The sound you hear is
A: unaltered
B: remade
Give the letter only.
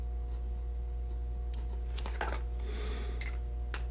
A